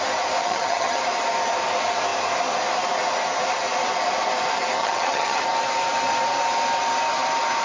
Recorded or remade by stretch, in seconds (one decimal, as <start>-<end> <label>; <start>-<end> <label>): 0.0-0.4 recorded; 0.4-1.0 remade; 1.0-4.8 recorded; 4.8-5.4 remade; 5.4-7.6 recorded